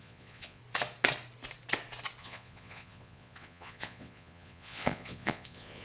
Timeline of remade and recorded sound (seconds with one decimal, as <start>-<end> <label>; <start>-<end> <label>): 0.0-0.6 remade; 0.6-2.2 recorded; 2.2-5.8 remade